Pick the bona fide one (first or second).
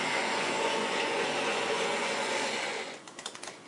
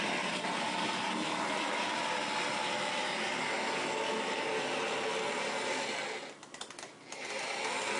second